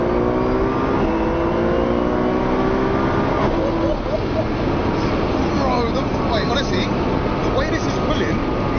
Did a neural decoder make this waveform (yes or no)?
no